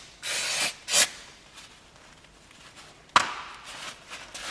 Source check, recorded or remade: recorded